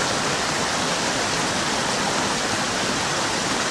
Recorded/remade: recorded